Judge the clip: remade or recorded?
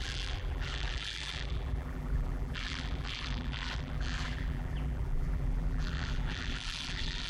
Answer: remade